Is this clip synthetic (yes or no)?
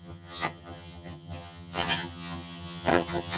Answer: yes